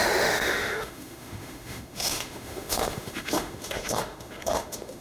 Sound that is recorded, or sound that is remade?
remade